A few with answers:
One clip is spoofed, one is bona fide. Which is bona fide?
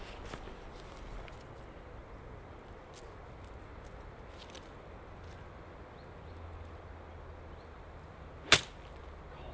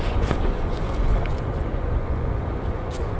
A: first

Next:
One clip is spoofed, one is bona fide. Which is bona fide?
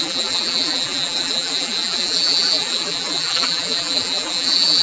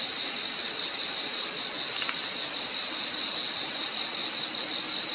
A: second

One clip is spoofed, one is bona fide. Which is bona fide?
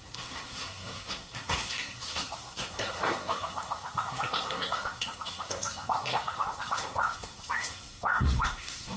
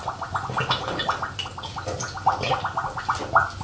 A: second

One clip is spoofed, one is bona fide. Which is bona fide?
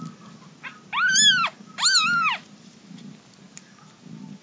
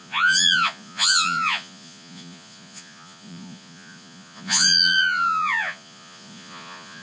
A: first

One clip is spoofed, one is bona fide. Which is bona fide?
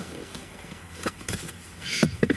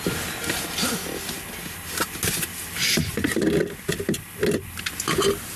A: second